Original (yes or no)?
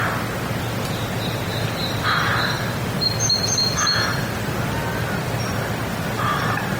yes